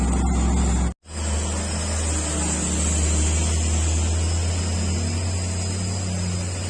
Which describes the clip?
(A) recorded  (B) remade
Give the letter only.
A